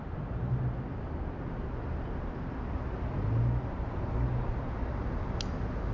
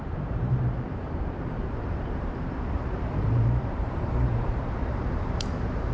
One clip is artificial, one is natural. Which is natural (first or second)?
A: first